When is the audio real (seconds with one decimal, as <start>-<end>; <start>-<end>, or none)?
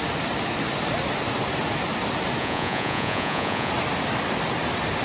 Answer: 0.0-2.4; 3.7-5.0